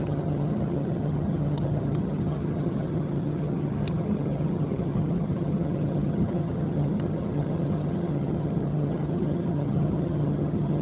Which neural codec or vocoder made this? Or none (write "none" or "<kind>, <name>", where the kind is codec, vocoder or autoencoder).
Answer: vocoder, HiFi-GAN